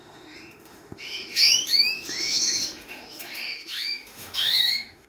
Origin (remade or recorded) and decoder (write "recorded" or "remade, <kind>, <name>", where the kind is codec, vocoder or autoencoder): remade, autoencoder, DAC-VAE